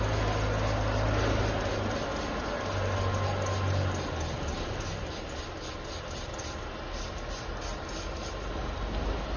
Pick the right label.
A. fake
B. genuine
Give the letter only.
B